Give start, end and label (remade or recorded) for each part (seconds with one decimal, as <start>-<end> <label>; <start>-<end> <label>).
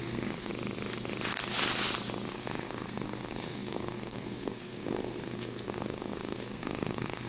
0.0-0.5 remade; 0.5-2.3 recorded; 2.3-7.3 remade